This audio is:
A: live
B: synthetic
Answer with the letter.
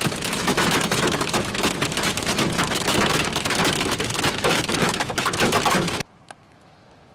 B